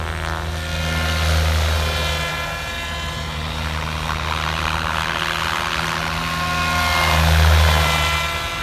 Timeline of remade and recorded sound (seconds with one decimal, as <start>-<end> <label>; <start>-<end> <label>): 0.0-8.6 recorded